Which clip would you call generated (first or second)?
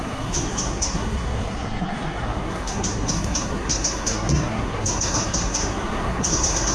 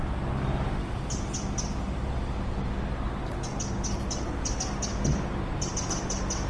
first